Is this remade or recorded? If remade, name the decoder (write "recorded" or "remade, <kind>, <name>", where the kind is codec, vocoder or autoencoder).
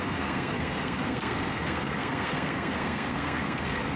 remade, codec, SNAC